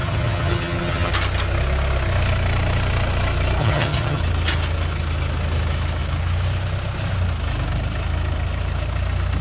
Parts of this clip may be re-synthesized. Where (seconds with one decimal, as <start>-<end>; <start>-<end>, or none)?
0.0-1.1; 3.6-4.2